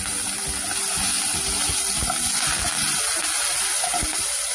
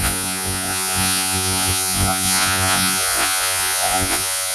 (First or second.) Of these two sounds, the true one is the first